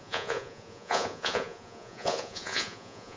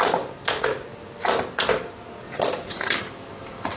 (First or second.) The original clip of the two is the second